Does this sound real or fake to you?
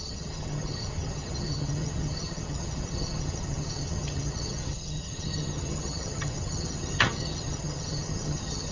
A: fake